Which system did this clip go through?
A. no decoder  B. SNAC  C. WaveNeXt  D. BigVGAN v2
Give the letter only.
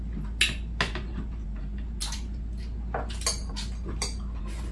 A